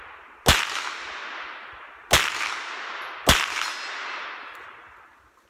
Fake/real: real